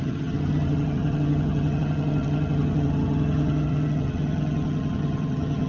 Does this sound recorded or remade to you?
remade